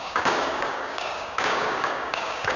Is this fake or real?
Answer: fake